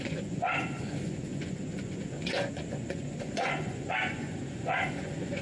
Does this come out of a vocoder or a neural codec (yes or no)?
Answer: yes